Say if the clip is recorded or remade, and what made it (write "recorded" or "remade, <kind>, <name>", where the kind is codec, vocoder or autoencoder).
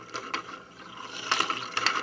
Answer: recorded